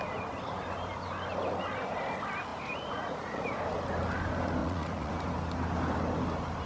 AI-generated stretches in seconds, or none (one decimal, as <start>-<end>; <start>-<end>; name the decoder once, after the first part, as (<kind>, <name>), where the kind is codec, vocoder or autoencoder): 2.5-3.6 (vocoder, Vocos); 4.6-5.1